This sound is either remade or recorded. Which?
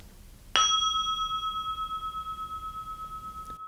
recorded